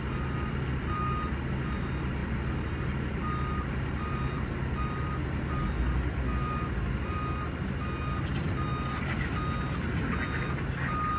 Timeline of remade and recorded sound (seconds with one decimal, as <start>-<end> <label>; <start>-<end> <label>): 0.0-11.2 recorded